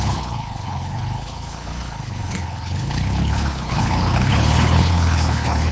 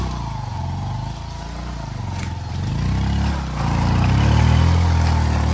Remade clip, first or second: first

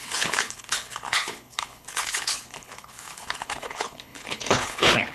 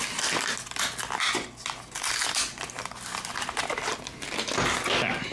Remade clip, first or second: first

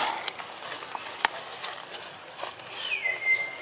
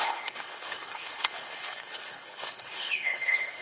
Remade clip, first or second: second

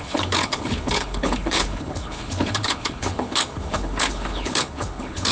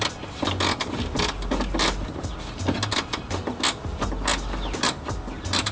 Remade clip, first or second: first